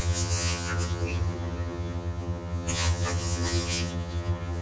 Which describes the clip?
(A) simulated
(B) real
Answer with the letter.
A